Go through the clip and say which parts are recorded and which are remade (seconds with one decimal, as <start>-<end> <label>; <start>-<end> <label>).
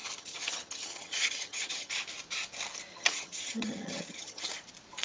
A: 0.0-1.9 remade; 1.9-2.9 recorded; 2.9-4.5 remade; 4.5-5.0 recorded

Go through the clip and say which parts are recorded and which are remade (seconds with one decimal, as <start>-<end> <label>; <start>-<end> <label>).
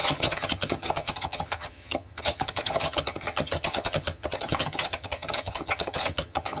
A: 0.0-6.6 remade